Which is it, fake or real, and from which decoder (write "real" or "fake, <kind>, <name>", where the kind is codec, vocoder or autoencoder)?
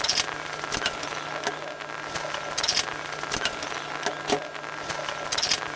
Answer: real